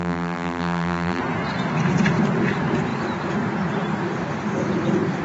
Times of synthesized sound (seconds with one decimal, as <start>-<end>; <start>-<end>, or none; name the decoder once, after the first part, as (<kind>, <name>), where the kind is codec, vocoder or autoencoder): 0.0-1.2 (vocoder, BigVGAN v2)